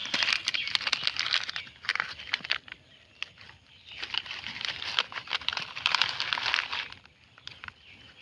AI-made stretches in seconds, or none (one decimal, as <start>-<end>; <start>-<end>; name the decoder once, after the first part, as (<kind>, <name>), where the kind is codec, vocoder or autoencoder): none

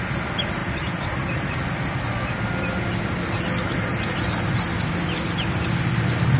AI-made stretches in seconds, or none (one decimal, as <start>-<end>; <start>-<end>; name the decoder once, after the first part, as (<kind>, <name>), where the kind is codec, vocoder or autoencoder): none

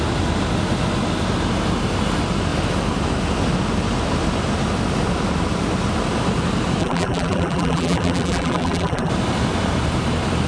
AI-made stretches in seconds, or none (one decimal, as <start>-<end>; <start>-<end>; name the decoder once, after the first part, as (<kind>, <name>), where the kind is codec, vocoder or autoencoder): 6.8-9.1 (vocoder, BigVGAN v2)